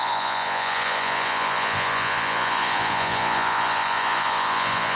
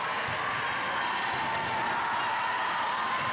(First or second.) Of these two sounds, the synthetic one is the first